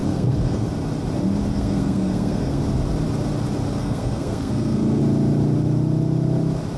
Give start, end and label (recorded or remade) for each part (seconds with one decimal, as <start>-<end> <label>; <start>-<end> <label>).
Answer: 0.0-0.7 remade; 0.7-1.5 recorded; 1.5-2.6 remade; 2.6-3.8 recorded; 3.8-5.0 remade; 5.0-6.8 recorded